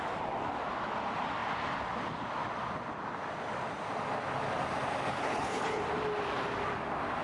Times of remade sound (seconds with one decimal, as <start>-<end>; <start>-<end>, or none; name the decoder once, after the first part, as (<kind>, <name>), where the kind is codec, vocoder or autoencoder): 5.1-5.8 (codec, HILCodec)